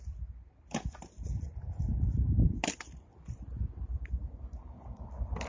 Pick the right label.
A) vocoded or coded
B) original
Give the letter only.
B